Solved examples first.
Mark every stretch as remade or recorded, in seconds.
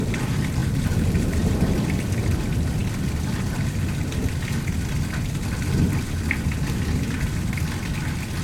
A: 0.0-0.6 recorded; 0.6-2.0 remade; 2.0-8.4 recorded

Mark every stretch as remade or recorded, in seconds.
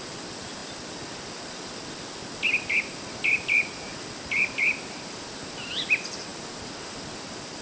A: 0.0-7.6 recorded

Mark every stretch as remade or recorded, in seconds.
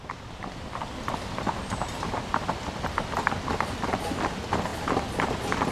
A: 0.0-4.7 recorded; 4.7-5.7 remade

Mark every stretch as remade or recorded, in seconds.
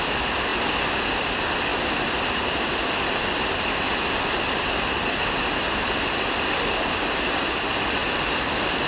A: 0.0-8.0 recorded; 8.0-8.9 remade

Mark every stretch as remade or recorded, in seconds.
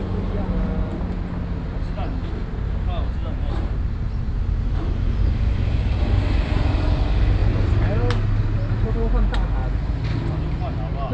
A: 0.0-3.2 recorded; 3.2-6.1 remade; 6.1-11.1 recorded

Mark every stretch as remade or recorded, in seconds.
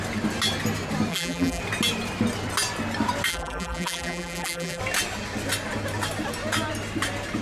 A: 0.0-1.1 recorded; 1.1-1.6 remade; 1.6-3.3 recorded; 3.3-4.8 remade; 4.8-7.4 recorded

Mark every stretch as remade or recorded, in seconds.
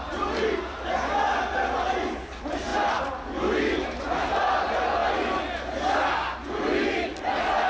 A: 0.0-5.0 remade; 5.0-7.7 recorded